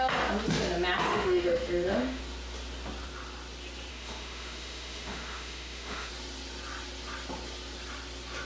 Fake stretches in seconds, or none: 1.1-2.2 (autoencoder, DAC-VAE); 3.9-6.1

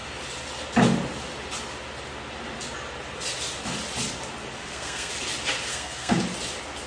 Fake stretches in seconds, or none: 4.6-5.1 (codec, SNAC); 5.7-6.2

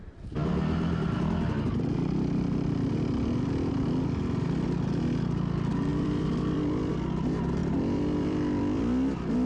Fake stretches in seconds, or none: 5.9-6.9 (vocoder, BigVGAN v2); 7.6-8.8

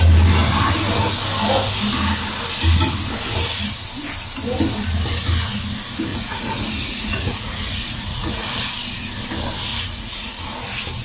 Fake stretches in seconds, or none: 6.1-8.5 (vocoder, Vocos); 9.7-10.4

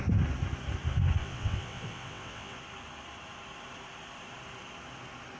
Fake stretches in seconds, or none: 1.2-2.6 (vocoder, WaveNeXt)

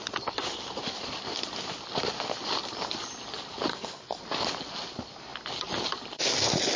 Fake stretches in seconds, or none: 3.7-4.2 (codec, SNAC)

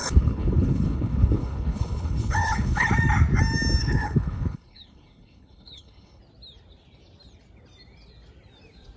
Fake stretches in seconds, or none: 0.0-2.9 (codec, HILCodec); 3.8-6.2